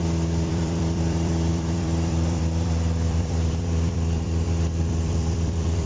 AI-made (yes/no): yes